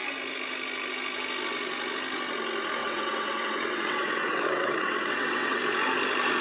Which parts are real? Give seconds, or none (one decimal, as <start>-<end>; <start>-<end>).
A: 0.0-2.8; 5.6-6.4